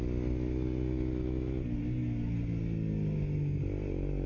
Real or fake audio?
real